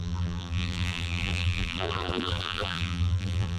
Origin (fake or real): fake